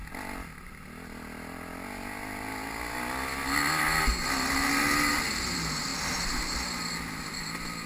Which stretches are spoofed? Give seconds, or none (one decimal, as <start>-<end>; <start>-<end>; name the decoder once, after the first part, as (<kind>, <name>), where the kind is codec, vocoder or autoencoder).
none